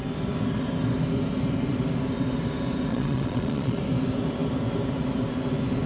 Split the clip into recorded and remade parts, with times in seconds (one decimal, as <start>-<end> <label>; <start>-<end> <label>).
0.0-2.9 recorded; 2.9-3.8 remade; 3.8-5.9 recorded